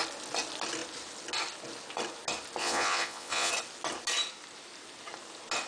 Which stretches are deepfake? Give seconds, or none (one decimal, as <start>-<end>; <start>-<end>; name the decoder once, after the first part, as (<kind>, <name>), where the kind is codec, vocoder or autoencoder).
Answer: 2.6-3.5 (vocoder, Vocos)